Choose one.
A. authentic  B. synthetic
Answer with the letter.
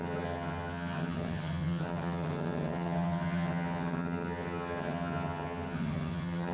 B